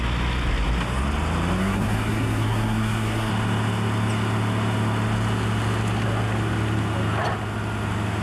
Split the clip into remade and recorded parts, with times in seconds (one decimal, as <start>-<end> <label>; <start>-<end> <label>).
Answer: 0.0-1.6 recorded; 1.6-3.3 remade; 3.3-8.2 recorded